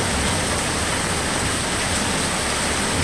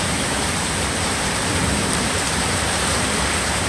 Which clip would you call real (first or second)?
first